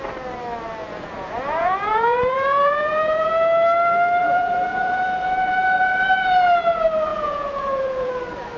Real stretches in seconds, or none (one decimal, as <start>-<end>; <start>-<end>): 0.0-0.8; 3.3-4.2; 5.0-7.1; 8.1-8.6